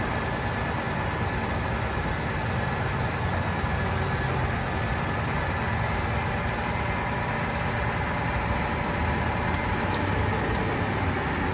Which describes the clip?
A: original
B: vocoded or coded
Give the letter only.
A